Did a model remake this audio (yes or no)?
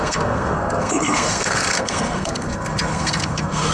yes